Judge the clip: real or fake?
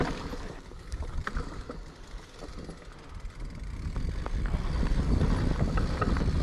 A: real